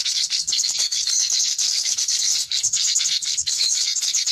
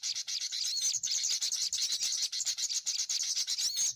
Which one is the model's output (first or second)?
first